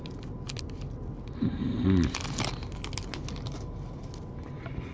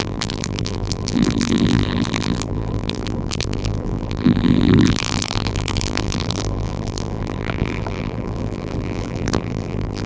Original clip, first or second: first